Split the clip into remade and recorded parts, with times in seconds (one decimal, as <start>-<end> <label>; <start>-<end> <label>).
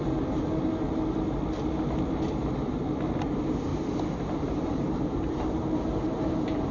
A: 0.0-3.7 recorded; 3.7-6.7 remade